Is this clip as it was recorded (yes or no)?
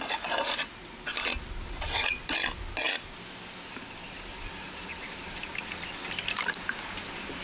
yes